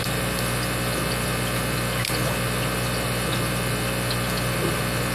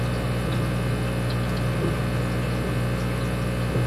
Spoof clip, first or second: first